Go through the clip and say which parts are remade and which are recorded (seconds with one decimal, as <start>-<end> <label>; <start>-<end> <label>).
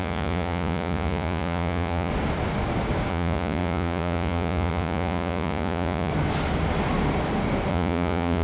0.0-2.1 remade; 2.1-3.1 recorded; 3.1-6.1 remade; 6.1-7.7 recorded; 7.7-8.4 remade